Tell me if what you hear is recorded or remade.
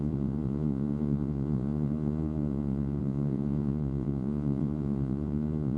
remade